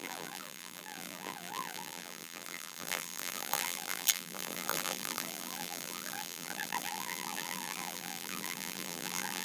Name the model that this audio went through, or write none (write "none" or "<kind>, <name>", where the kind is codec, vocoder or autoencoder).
vocoder, BigVGAN v2